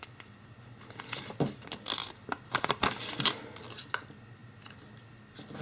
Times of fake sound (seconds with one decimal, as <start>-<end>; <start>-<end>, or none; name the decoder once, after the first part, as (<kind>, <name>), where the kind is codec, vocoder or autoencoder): none